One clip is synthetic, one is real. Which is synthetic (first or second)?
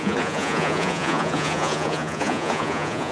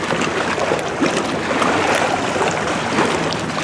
first